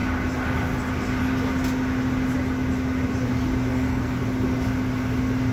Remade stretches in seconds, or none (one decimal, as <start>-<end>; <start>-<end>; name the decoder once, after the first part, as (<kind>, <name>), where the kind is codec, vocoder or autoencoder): 3.7-4.2 (codec, SNAC)